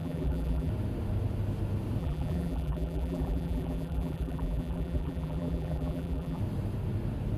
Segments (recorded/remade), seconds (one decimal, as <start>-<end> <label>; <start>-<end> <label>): 0.0-0.7 remade; 0.7-2.0 recorded; 2.0-6.4 remade; 6.4-7.4 recorded